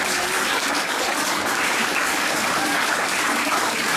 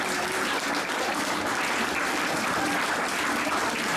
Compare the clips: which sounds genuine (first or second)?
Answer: second